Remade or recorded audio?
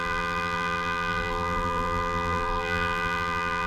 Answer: remade